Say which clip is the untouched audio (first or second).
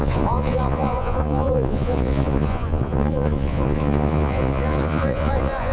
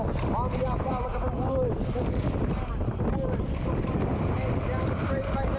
second